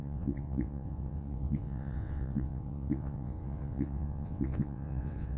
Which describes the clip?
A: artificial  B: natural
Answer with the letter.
A